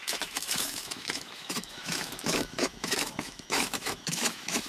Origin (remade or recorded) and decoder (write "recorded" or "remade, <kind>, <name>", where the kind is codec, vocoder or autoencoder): remade, autoencoder, DAC-VAE